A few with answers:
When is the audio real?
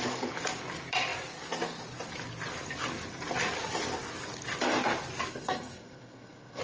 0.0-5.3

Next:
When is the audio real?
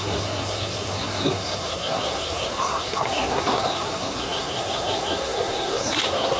none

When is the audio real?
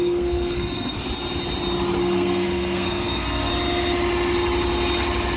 1.0-2.0; 3.5-5.4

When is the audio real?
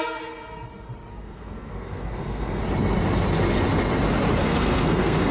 0.0-1.1; 2.6-4.4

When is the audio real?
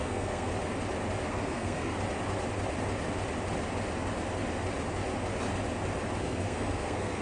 0.5-1.3; 1.9-6.2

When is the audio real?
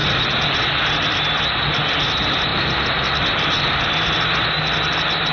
0.0-5.3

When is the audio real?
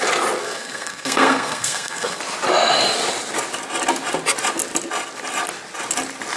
0.0-0.4; 2.2-6.4